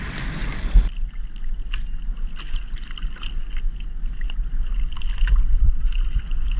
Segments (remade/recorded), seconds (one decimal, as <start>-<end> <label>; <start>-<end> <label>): 0.0-6.6 recorded